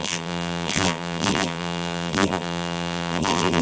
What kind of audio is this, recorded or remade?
remade